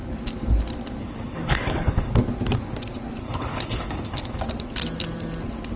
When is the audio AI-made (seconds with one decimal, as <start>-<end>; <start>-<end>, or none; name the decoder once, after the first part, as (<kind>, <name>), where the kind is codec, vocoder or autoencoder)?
1.0-2.1 (codec, HILCodec); 3.2-4.4